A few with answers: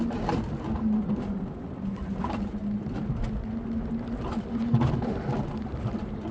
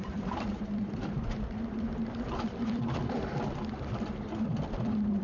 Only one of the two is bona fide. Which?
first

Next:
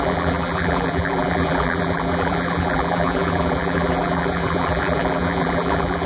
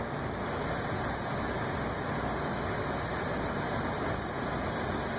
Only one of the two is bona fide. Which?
second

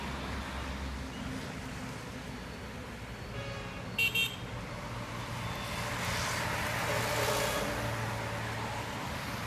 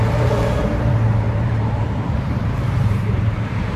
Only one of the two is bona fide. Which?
first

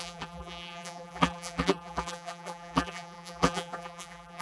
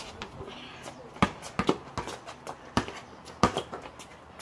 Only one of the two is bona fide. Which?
second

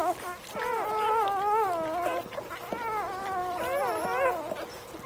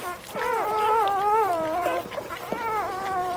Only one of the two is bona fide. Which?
first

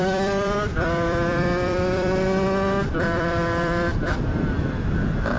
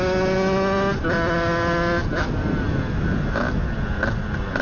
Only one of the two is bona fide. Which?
second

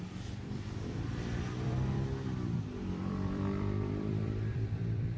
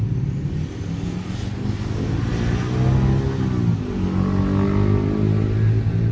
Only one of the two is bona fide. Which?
second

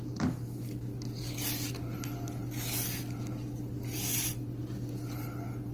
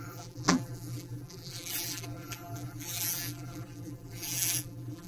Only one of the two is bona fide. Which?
first